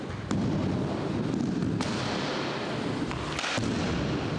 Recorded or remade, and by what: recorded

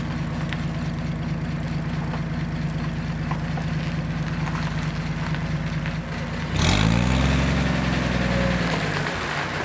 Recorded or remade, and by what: recorded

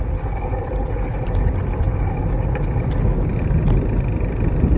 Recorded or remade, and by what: recorded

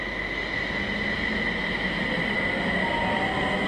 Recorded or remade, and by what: recorded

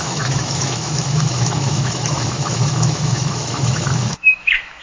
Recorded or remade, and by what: remade, autoencoder, DAC-VAE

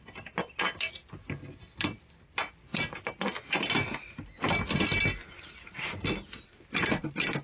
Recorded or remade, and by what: recorded